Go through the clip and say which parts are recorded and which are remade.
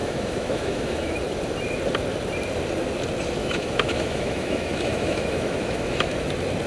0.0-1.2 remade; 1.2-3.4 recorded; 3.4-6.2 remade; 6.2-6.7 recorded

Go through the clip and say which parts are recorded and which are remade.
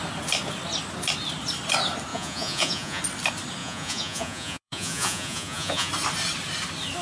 0.0-2.1 recorded; 2.1-3.0 remade; 3.0-3.6 recorded; 3.6-5.9 remade; 5.9-7.0 recorded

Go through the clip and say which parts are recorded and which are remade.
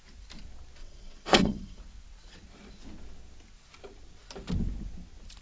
0.0-0.8 recorded; 0.8-1.8 remade; 1.8-5.4 recorded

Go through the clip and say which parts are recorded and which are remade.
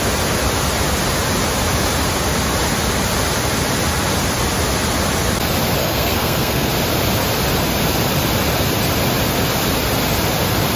0.0-5.8 recorded; 5.8-6.7 remade; 6.7-10.8 recorded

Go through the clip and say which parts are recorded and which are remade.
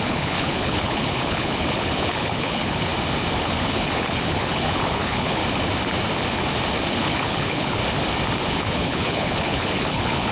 0.0-2.9 remade; 2.9-3.4 recorded; 3.4-5.4 remade; 5.4-6.9 recorded; 6.9-7.8 remade; 7.8-8.5 recorded; 8.5-10.3 remade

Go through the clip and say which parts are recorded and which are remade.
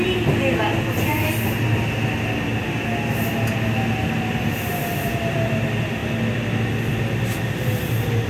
0.0-8.3 recorded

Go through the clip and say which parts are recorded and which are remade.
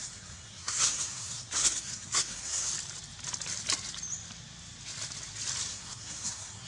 0.0-2.7 remade; 2.7-5.7 recorded; 5.7-6.7 remade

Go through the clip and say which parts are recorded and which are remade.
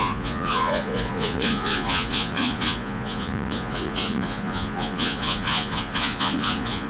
0.0-6.9 remade